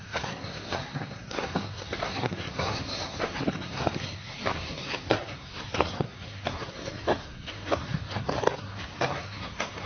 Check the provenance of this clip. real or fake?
fake